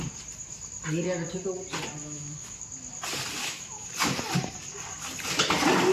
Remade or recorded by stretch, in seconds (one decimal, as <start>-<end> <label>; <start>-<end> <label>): 0.0-2.0 recorded; 2.0-2.6 remade; 2.6-3.4 recorded; 3.4-3.9 remade; 3.9-5.9 recorded